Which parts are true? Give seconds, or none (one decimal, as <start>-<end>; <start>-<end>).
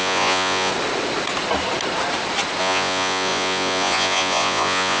0.7-2.6